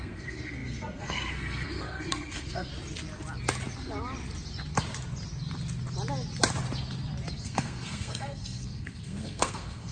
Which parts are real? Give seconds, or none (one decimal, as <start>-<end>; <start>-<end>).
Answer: 2.7-7.4